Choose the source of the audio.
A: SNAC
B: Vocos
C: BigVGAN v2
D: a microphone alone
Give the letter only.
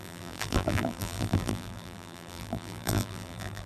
C